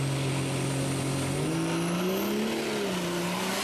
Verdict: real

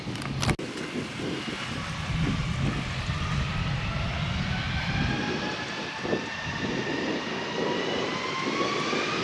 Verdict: real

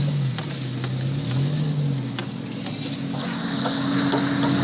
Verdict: real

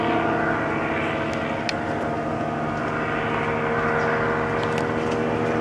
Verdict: real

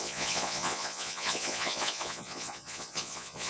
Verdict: fake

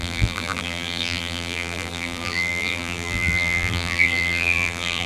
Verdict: fake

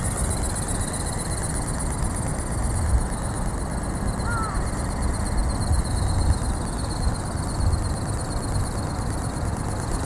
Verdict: real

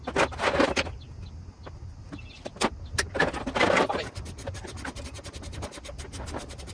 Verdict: real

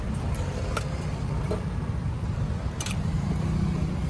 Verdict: real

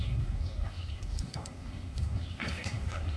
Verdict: fake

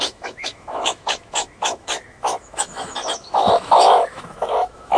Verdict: fake